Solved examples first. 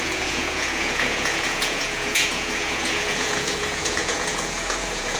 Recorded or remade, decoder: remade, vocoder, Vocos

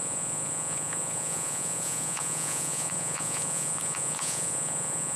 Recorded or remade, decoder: remade, vocoder, Vocos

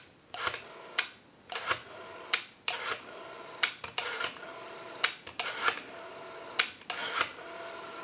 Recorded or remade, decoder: recorded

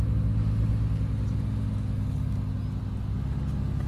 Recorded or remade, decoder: recorded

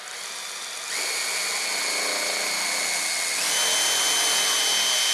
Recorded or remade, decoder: recorded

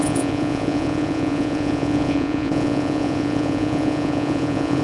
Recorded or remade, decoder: remade, vocoder, Vocos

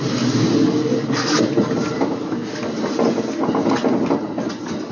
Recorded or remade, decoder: recorded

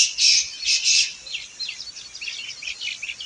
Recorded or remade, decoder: recorded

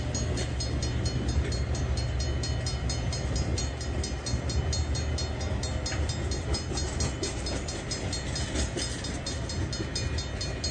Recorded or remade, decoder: recorded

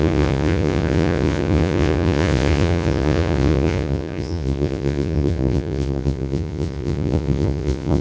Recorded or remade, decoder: remade, vocoder, Vocos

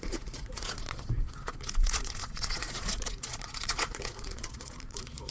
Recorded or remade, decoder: remade, vocoder, Vocos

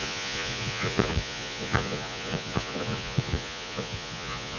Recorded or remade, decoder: remade, vocoder, Vocos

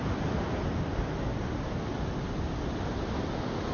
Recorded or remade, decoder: recorded